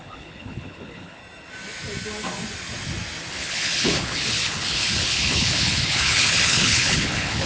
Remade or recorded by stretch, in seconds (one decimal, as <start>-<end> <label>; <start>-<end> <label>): 0.0-1.2 remade; 1.2-3.3 recorded; 3.3-7.5 remade